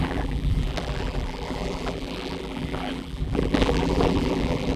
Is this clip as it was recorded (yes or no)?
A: no